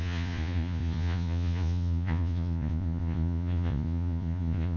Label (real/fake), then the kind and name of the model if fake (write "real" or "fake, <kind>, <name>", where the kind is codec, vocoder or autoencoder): fake, vocoder, Vocos